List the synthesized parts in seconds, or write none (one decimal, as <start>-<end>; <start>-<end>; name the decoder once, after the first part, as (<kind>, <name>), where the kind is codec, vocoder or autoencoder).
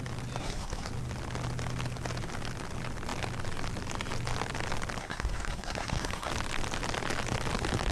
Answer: 0.4-0.9 (codec, SNAC); 5.0-6.3